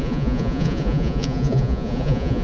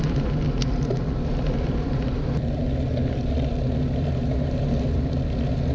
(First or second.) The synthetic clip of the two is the first